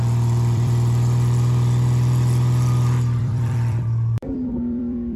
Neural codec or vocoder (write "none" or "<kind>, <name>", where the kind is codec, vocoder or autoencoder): vocoder, BigVGAN v2